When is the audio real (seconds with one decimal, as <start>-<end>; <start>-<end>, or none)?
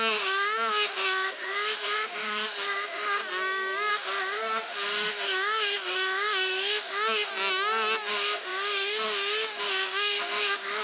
3.2-3.9; 7.3-8.1